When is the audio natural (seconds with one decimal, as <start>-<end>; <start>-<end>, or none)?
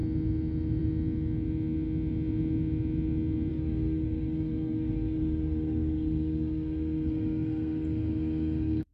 0.0-3.5